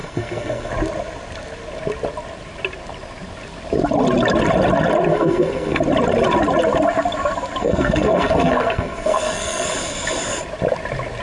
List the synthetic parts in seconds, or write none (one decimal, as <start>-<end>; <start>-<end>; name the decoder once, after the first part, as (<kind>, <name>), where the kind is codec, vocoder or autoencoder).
0.0-0.7 (codec, SNAC); 5.1-5.8; 7.6-9.7